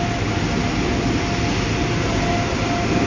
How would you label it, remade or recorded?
recorded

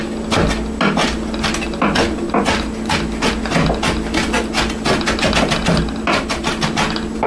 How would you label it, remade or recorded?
recorded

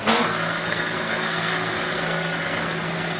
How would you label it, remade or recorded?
remade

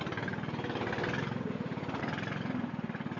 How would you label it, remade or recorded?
recorded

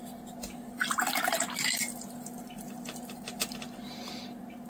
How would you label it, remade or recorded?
recorded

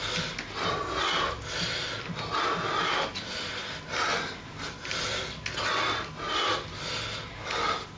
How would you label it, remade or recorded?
recorded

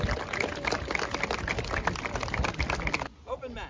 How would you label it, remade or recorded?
recorded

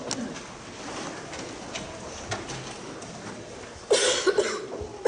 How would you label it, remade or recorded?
recorded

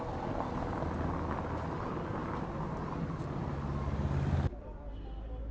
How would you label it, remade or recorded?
recorded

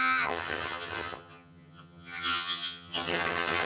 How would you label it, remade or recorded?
remade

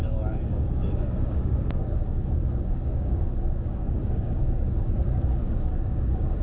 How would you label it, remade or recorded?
remade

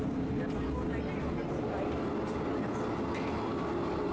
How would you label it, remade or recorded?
recorded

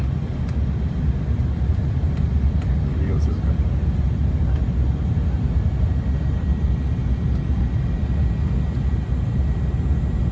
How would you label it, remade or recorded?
recorded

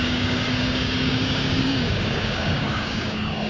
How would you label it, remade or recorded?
remade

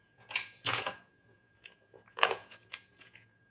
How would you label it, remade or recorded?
remade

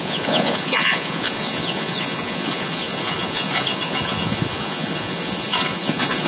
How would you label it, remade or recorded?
remade